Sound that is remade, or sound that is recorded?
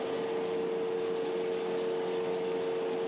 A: recorded